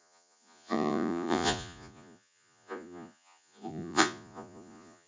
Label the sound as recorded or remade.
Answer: remade